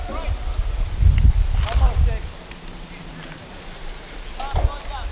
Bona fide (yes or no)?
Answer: yes